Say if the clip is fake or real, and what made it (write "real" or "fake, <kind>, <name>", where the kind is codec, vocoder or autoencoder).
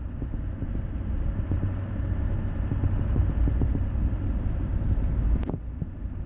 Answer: real